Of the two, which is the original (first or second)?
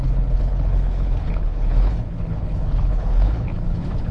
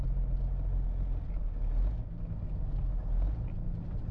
second